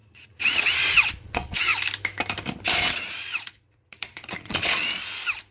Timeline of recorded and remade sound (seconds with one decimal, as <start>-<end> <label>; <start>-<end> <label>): 0.0-1.7 remade; 1.7-2.7 recorded; 2.7-4.8 remade; 4.8-5.5 recorded